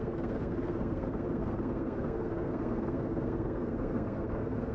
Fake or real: fake